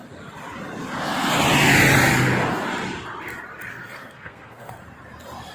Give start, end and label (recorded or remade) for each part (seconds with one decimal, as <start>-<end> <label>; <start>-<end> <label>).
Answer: 0.0-3.7 recorded; 3.7-4.7 remade; 4.7-5.5 recorded